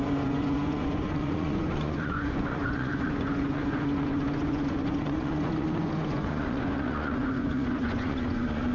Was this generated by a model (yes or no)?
yes